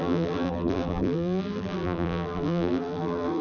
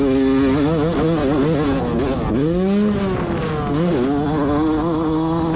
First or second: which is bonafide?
second